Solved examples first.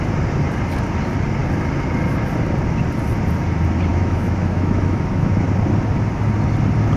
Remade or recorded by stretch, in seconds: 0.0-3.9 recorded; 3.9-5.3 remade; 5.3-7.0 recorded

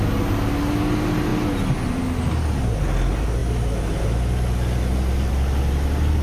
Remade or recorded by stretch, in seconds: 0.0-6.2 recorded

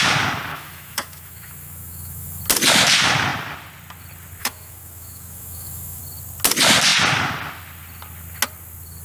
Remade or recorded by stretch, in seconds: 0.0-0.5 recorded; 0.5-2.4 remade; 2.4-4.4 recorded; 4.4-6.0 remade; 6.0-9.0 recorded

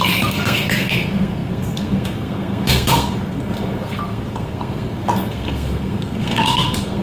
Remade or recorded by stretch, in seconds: 0.0-7.0 remade

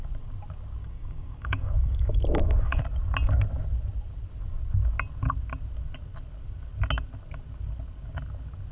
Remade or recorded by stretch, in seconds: 0.0-0.8 recorded; 0.8-2.8 remade; 2.8-8.7 recorded

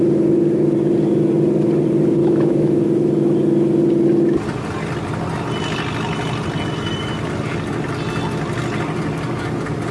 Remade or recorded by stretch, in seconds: 0.0-2.2 recorded; 2.2-2.8 remade; 2.8-9.9 recorded

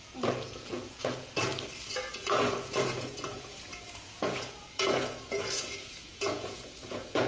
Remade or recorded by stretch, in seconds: 0.0-1.5 remade; 1.5-2.1 recorded; 2.1-7.3 remade